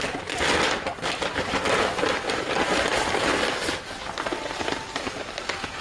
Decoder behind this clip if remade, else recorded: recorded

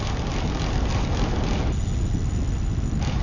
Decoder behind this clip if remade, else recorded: recorded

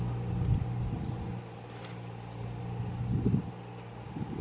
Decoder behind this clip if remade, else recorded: recorded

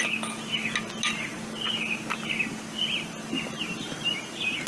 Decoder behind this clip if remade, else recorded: recorded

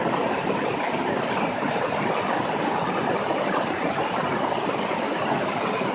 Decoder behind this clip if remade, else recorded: recorded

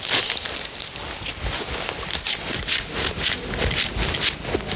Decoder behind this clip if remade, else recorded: recorded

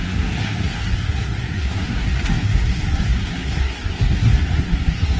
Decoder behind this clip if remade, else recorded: remade, codec, SNAC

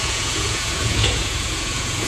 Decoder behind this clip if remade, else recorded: remade, vocoder, Vocos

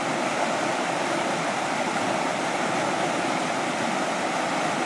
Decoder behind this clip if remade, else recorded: recorded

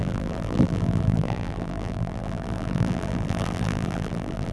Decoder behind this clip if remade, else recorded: remade, vocoder, BigVGAN v2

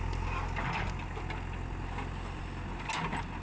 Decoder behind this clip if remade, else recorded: recorded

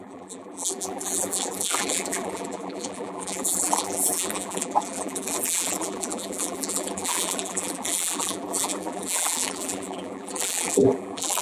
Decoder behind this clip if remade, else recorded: remade, vocoder, BigVGAN v2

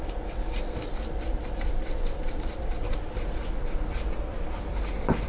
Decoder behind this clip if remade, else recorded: remade, vocoder, BigVGAN v2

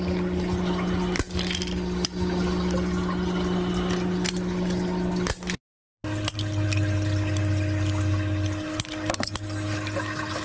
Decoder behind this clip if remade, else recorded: recorded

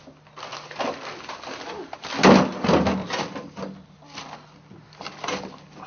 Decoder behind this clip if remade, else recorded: recorded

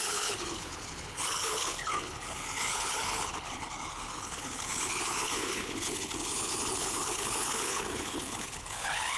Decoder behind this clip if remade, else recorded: remade, codec, HILCodec